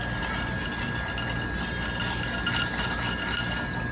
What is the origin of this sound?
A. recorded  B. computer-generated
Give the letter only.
A